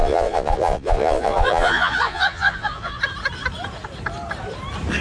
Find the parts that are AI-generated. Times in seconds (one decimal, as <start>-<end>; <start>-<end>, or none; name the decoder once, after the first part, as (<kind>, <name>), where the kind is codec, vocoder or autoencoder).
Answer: 0.0-3.0 (vocoder, Vocos)